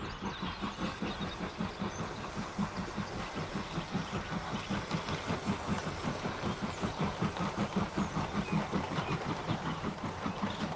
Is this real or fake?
real